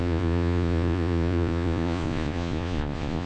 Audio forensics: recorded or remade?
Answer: remade